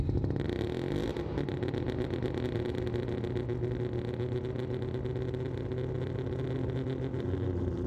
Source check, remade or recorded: recorded